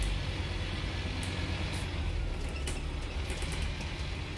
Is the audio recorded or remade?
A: recorded